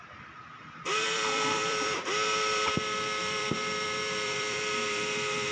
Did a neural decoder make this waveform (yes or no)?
yes